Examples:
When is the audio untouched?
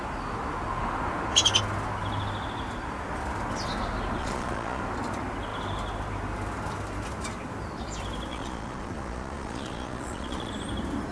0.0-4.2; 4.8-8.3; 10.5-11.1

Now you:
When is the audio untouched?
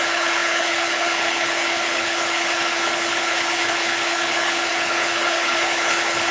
none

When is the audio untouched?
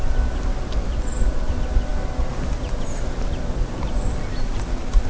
0.0-5.1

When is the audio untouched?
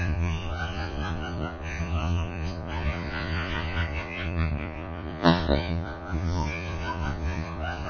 none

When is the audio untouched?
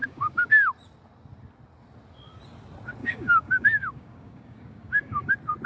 0.5-3.0; 5.3-5.7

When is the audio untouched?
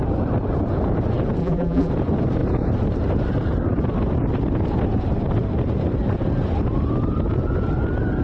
0.0-1.4; 1.9-8.2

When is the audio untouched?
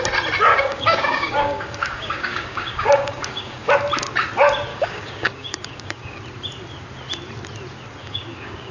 0.0-0.5; 3.7-4.7; 6.2-8.0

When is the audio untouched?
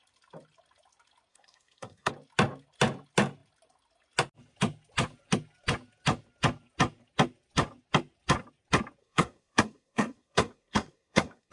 0.0-1.3; 2.1-9.0